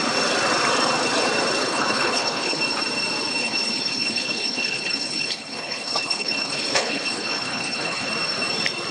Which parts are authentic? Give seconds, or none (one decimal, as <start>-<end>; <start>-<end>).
0.0-1.6; 2.6-3.4; 8.1-8.9